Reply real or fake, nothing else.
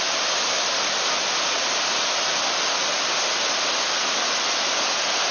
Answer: real